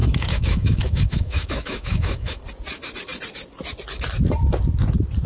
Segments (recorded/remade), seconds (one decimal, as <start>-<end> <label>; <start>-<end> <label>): 0.0-2.4 remade; 2.4-5.3 recorded